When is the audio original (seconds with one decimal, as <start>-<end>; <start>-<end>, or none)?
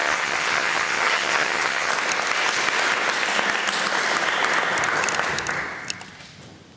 1.9-6.8